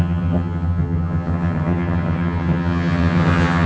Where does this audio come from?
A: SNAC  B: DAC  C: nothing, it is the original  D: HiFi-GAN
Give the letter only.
D